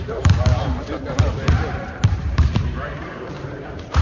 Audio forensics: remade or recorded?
remade